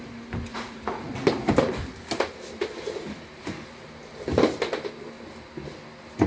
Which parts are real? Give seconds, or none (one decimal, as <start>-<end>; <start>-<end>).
0.0-0.5; 1.1-6.3